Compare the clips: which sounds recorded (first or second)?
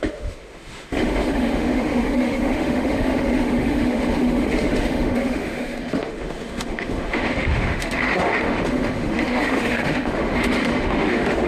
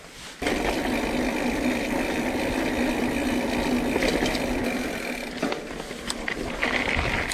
second